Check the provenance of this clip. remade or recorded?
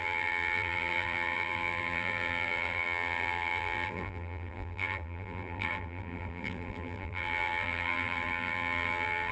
remade